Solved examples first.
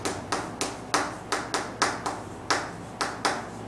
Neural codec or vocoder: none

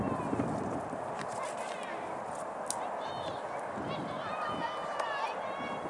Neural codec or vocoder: none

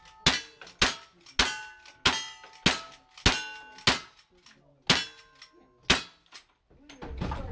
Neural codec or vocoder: none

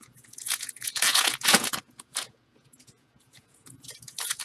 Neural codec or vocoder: vocoder, Vocos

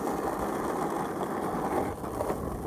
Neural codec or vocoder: none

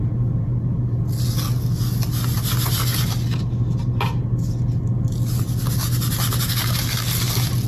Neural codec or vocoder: none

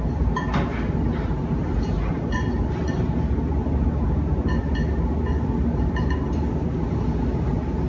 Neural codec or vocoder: none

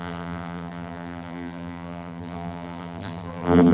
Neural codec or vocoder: vocoder, BigVGAN v2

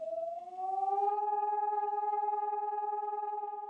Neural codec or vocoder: codec, SNAC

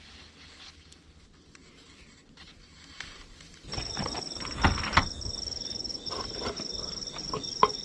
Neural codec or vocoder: none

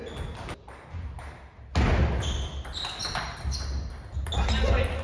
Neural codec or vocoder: none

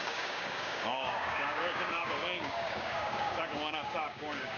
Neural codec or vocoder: codec, DAC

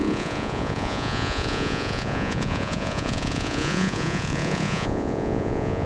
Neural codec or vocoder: vocoder, Vocos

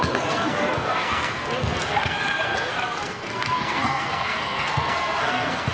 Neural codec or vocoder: codec, SNAC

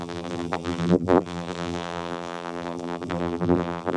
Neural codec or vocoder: vocoder, BigVGAN v2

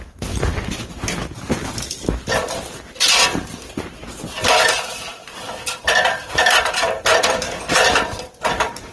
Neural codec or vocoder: none